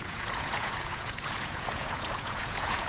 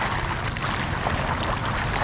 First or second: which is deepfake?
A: first